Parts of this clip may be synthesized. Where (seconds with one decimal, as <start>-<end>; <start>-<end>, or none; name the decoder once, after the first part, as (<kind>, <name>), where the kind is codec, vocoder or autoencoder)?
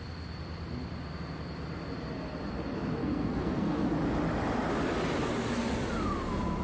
3.0-3.9 (codec, SNAC)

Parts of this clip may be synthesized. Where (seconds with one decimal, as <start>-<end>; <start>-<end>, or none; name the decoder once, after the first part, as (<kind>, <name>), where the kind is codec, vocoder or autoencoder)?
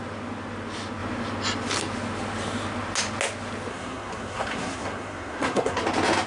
3.7-5.8 (codec, SNAC)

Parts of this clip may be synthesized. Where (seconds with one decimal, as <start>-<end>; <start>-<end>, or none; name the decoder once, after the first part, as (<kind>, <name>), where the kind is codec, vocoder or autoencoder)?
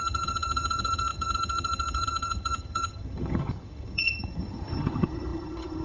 0.0-5.8 (vocoder, HiFi-GAN)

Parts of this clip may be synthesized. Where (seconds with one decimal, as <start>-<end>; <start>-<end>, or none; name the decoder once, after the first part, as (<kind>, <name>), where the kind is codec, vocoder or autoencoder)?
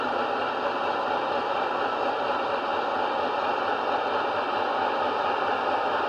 0.0-2.7 (vocoder, BigVGAN v2); 5.3-6.1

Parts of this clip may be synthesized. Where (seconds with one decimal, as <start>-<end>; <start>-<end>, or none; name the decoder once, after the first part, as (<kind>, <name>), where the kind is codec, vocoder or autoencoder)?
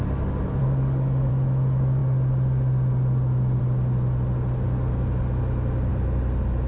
0.6-1.3 (codec, DAC)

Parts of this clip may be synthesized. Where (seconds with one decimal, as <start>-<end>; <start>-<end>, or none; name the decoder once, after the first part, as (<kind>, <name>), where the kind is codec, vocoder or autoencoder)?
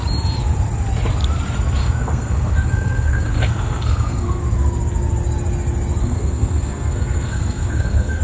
1.8-4.4 (codec, SNAC); 6.0-8.2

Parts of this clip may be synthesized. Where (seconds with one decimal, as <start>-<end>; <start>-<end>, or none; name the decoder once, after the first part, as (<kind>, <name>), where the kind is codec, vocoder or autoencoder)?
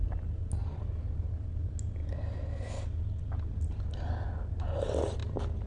none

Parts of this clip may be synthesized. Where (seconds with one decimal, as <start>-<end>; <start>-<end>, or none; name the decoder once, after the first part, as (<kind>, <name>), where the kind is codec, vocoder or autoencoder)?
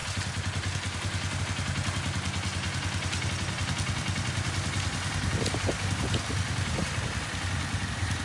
none